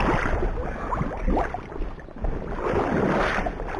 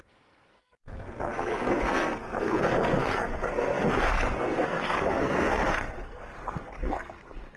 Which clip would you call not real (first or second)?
second